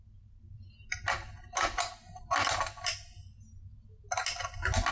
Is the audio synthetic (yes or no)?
no